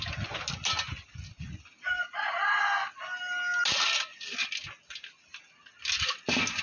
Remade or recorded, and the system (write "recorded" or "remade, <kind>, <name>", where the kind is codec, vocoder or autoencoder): recorded